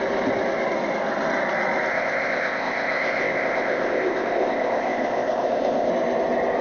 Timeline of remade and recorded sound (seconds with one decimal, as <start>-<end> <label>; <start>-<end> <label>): 0.0-1.9 recorded; 1.9-5.9 remade; 5.9-6.6 recorded